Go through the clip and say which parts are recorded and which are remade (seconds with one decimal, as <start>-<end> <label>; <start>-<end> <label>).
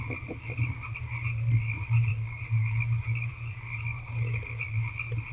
0.0-2.1 recorded; 2.1-3.3 remade; 3.3-3.9 recorded; 3.9-4.7 remade; 4.7-5.3 recorded